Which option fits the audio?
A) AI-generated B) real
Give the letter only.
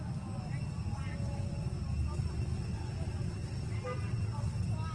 B